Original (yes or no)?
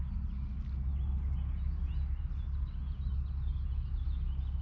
yes